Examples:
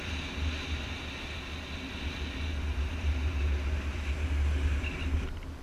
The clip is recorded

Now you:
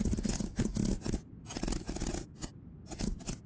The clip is recorded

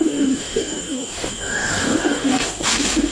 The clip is remade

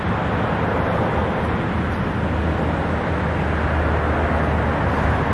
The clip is recorded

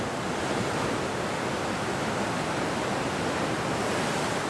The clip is recorded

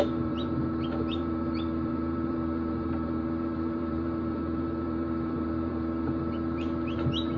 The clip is remade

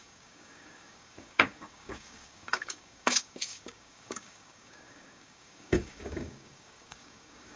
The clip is remade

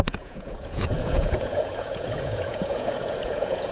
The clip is remade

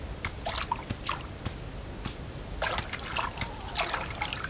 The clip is recorded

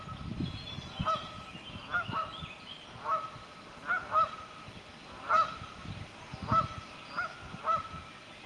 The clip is recorded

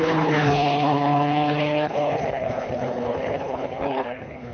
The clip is remade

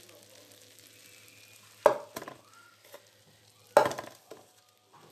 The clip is recorded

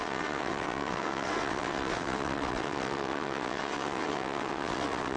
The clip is remade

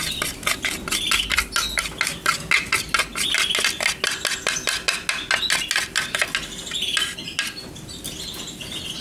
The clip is recorded